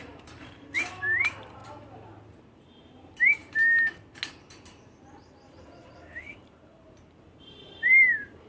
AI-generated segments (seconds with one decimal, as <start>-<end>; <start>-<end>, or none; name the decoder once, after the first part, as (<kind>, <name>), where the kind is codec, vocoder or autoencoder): 0.0-1.6 (vocoder, BigVGAN v2); 2.5-3.4; 4.4-8.5